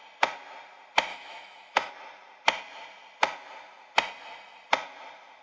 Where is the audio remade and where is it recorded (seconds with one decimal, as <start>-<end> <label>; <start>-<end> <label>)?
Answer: 0.0-1.1 recorded; 1.1-1.9 remade; 1.9-5.4 recorded